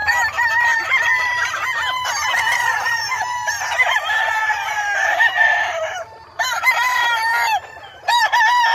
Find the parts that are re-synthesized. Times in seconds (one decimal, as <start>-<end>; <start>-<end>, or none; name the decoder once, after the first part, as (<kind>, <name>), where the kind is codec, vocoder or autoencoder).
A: 0.0-7.3 (vocoder, BigVGAN v2); 8.1-8.7